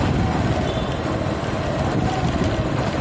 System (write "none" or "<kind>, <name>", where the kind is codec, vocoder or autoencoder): none